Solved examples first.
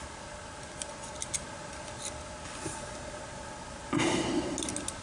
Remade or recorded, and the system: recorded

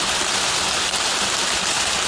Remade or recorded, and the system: recorded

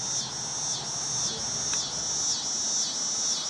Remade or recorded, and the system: recorded